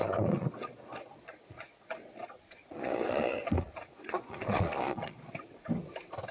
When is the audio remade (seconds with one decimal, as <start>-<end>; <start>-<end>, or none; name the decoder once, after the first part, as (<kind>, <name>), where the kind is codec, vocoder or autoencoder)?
0.0-2.1 (vocoder, Vocos); 2.6-5.3